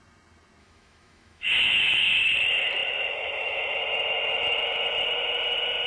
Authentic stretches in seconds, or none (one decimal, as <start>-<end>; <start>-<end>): 0.0-0.6; 2.2-5.9